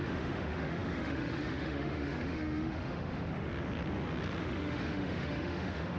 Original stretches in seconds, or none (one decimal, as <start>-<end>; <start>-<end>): 3.5-4.4

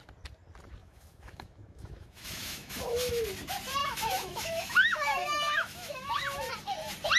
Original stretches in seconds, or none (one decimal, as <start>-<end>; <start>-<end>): 0.0-0.8; 3.2-3.8; 6.5-7.2

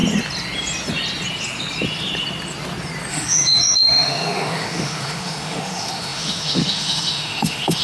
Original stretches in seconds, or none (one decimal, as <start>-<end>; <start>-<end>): 0.0-3.1

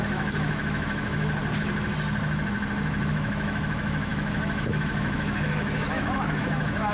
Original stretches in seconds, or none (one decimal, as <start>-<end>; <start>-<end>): 1.4-3.1

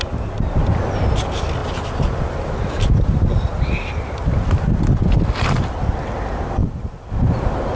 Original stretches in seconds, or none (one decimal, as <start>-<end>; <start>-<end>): 0.0-7.8

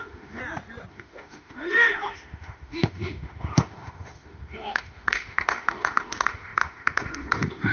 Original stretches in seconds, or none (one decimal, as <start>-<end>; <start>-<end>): 0.4-0.9

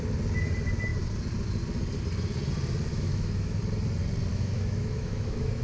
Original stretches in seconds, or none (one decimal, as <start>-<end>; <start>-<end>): 0.0-2.9; 3.6-4.3

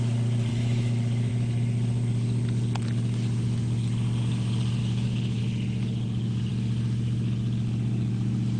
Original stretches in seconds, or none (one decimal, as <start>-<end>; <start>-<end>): 0.0-0.5; 1.3-4.8; 5.4-8.6